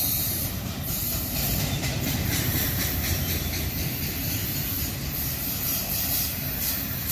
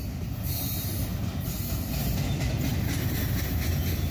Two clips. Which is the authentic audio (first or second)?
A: second